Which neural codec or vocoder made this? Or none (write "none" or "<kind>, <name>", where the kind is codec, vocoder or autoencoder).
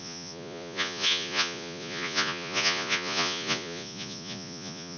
vocoder, Vocos